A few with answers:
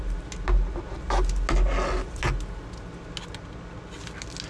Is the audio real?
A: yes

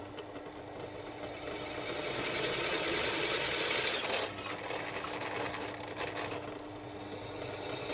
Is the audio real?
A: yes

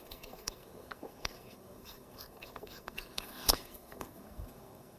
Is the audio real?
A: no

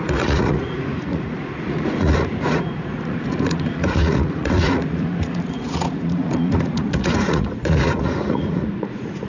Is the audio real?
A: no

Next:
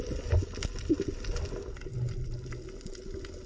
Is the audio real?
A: yes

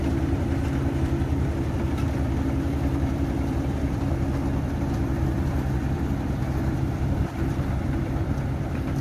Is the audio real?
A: no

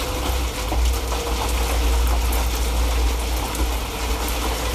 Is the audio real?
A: yes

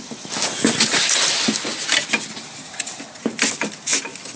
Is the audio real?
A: yes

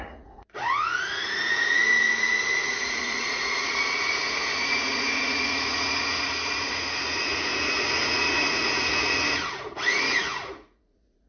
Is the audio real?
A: no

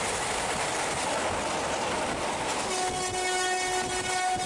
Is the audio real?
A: yes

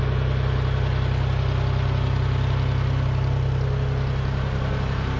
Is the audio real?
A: yes